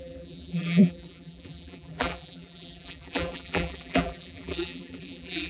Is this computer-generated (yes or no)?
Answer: yes